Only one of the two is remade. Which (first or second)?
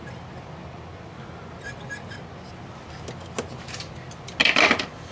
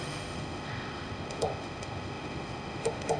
second